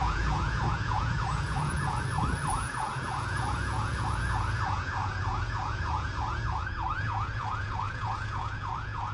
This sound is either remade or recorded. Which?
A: remade